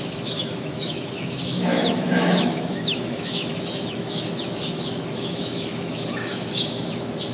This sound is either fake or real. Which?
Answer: fake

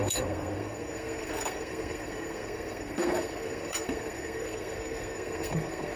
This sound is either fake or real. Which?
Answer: fake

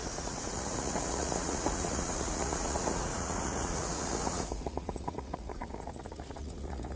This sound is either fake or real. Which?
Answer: fake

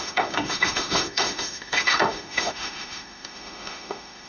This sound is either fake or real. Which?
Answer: fake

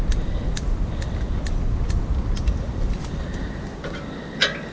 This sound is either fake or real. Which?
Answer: real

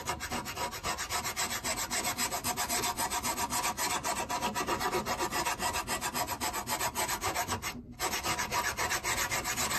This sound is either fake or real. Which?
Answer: real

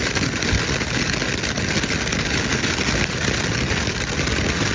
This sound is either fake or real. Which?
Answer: real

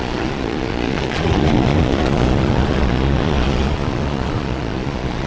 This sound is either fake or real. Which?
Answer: fake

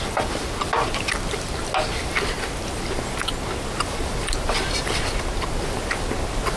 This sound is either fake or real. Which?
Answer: real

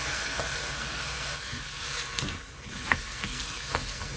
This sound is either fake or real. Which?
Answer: fake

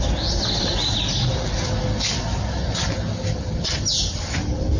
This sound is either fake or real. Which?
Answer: real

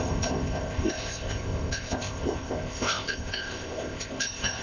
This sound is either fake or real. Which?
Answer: fake